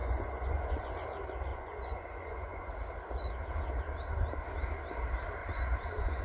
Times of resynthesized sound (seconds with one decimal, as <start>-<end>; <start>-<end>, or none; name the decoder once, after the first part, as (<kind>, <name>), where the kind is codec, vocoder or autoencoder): 0.0-0.9 (vocoder, Vocos); 1.5-2.7; 5.4-6.2